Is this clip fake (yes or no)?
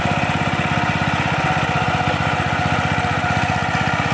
no